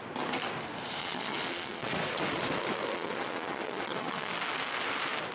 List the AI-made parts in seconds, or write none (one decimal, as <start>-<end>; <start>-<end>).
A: 1.0-1.9; 2.9-4.3